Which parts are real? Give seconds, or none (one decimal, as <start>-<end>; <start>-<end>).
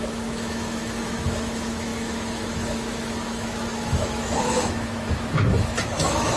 none